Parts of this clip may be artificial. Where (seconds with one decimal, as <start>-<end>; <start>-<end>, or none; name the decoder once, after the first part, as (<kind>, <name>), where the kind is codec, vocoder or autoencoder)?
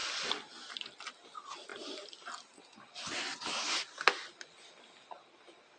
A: none